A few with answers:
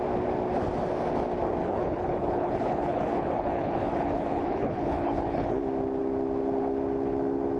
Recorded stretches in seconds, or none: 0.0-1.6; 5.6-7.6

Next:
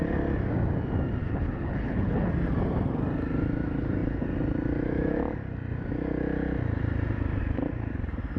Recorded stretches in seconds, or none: 0.0-1.2; 2.3-8.4

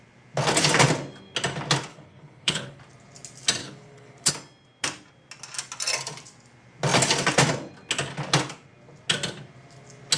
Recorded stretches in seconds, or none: 0.0-1.9; 2.8-3.6; 4.3-10.2

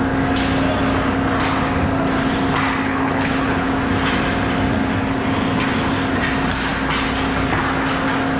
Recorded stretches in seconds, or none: 0.0-2.8; 3.7-8.4